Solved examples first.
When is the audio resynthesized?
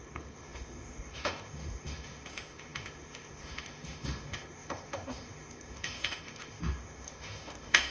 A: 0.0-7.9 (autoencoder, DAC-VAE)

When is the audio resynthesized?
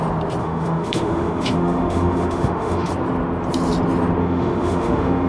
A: 0.4-2.9 (autoencoder, DAC-VAE); 4.2-5.3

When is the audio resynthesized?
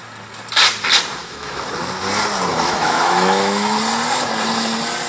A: 1.2-1.7 (autoencoder, DAC-VAE); 2.5-3.8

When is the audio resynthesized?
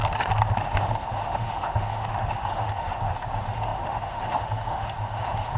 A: 0.6-5.6 (autoencoder, DAC-VAE)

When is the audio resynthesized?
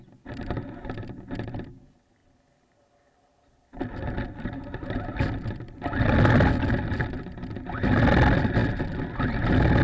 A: none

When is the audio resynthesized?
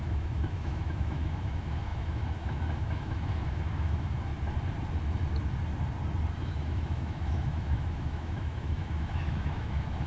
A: 0.0-4.3 (autoencoder, DAC-VAE); 6.4-10.1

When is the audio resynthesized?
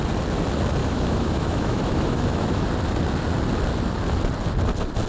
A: 0.8-2.7 (autoencoder, DAC-VAE)